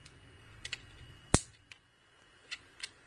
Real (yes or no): no